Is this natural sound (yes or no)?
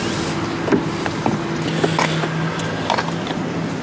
yes